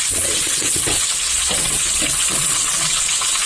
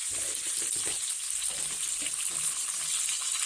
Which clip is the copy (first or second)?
first